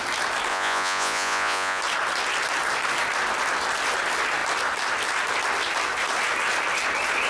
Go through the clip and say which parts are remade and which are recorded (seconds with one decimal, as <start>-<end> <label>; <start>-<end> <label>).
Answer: 0.0-0.5 recorded; 0.5-1.8 remade; 1.8-7.3 recorded